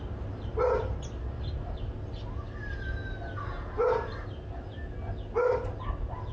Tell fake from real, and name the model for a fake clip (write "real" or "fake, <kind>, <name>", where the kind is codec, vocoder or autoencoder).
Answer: real